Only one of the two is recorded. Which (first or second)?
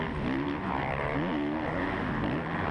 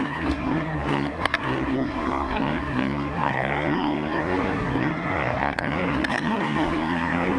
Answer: first